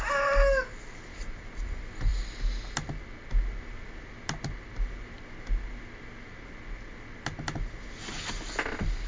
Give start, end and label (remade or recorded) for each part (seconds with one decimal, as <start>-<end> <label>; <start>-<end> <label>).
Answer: 0.0-9.1 recorded